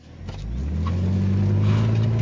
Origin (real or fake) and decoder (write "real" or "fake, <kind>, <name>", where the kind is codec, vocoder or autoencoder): real